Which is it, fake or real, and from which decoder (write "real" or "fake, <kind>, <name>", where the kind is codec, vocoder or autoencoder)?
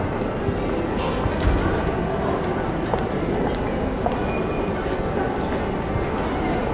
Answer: real